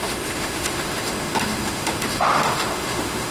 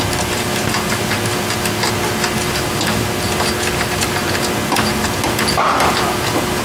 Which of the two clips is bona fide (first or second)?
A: second